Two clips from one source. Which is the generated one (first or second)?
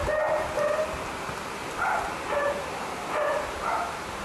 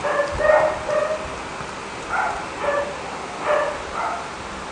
first